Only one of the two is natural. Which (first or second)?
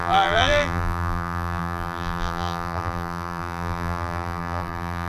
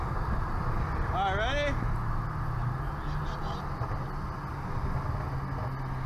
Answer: second